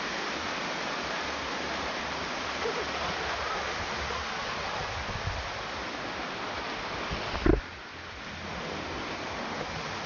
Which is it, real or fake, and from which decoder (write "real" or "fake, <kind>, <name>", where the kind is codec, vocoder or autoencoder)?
real